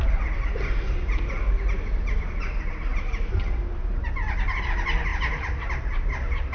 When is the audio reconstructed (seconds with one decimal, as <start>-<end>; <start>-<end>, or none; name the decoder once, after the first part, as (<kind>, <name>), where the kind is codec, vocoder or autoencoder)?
none